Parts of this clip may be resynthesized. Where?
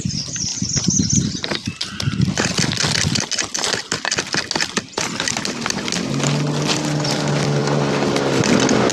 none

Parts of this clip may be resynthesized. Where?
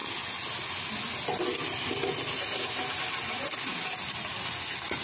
none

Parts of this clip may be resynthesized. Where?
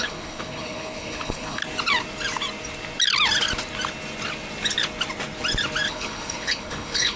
0.0-1.6 (codec, HILCodec); 5.9-7.2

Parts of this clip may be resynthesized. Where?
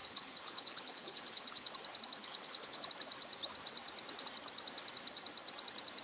0.0-1.7 (codec, HILCodec); 2.2-2.9